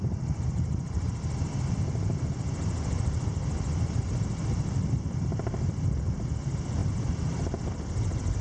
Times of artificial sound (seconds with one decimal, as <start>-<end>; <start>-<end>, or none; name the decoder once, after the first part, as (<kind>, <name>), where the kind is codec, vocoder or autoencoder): none